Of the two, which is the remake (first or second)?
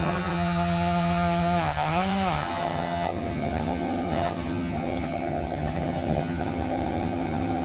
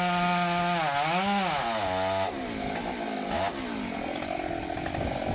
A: first